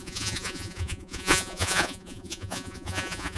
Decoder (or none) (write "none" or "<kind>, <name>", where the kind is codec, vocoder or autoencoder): vocoder, Vocos